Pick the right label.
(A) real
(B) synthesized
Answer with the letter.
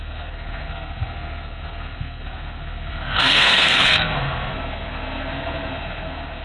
B